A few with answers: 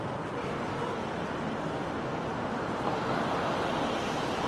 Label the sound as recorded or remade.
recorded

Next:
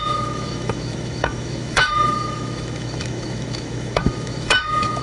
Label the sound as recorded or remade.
remade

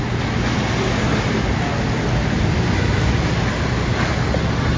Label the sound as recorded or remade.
recorded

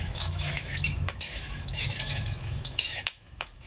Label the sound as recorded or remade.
remade